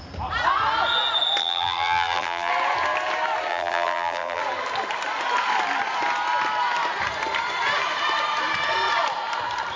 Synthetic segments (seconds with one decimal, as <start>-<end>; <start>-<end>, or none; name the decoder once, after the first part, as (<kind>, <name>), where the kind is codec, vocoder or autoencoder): 1.4-2.5 (vocoder, BigVGAN v2); 3.5-4.4